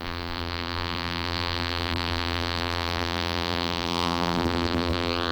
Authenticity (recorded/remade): remade